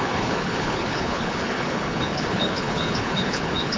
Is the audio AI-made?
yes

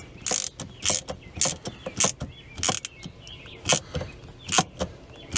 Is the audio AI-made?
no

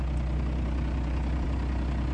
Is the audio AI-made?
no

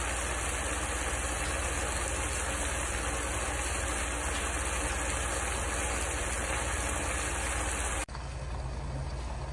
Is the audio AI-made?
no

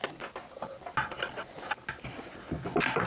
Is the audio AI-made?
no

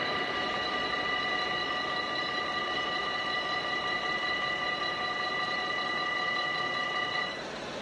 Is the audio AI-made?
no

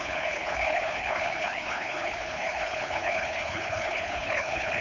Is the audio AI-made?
yes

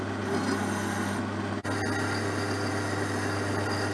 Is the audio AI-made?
no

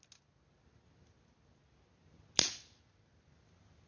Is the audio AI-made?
no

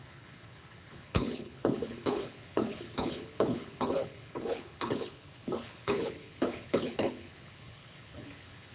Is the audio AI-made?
yes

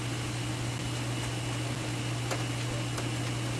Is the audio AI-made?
no